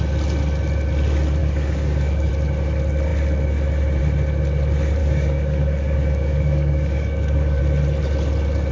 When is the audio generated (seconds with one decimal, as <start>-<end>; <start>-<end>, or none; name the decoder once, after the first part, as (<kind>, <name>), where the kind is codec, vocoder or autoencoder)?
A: 1.4-2.3 (codec, DAC); 5.0-7.6